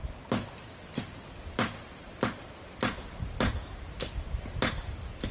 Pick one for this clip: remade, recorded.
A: recorded